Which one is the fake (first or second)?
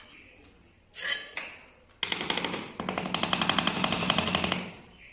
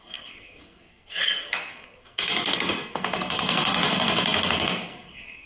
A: second